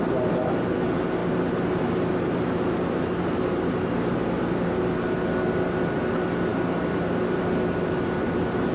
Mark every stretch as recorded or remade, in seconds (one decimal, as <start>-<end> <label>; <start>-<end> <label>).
0.0-8.7 recorded